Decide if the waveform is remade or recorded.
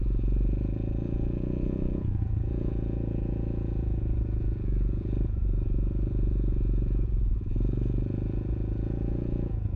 remade